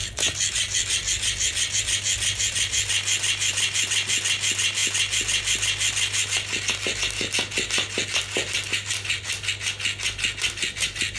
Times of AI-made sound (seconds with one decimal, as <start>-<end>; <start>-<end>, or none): none